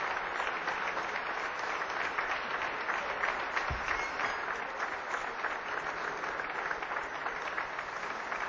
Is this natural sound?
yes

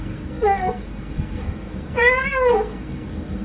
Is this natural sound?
no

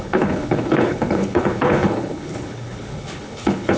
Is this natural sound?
no